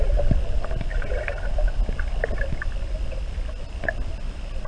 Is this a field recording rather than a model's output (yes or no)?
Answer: yes